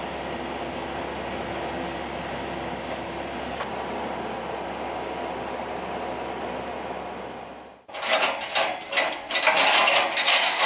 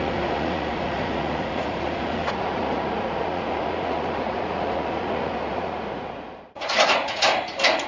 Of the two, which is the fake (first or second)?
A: second